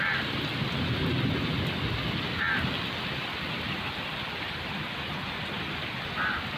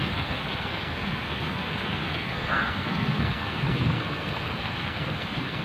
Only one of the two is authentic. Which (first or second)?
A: first